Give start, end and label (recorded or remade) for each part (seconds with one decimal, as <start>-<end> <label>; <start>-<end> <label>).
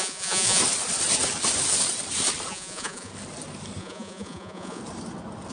0.0-0.6 remade; 0.6-2.5 recorded; 2.5-3.1 remade; 3.1-3.8 recorded; 3.8-4.8 remade; 4.8-5.5 recorded